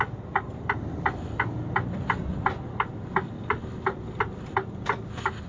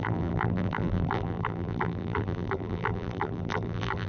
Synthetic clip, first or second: second